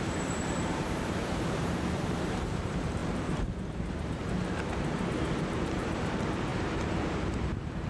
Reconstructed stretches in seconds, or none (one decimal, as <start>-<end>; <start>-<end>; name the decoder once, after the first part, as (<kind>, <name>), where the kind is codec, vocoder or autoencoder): 0.0-7.9 (vocoder, BigVGAN v2)